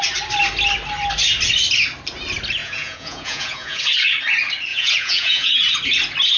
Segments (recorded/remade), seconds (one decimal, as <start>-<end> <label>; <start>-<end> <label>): 0.0-2.6 recorded; 2.6-3.8 remade; 3.8-4.7 recorded; 4.7-5.5 remade; 5.5-6.4 recorded